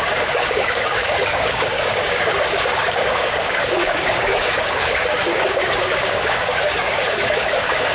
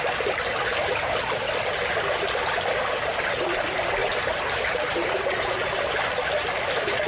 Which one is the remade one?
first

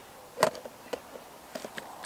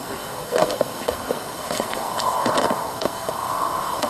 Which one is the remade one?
second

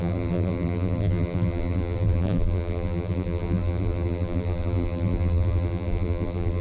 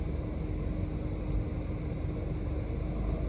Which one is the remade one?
first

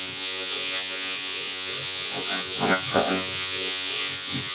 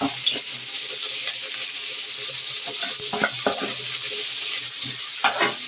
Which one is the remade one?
first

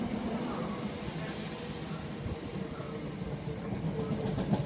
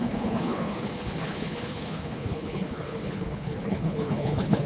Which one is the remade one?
second